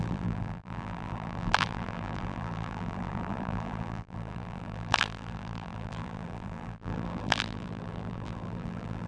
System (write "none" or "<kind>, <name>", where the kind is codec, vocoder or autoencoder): vocoder, BigVGAN v2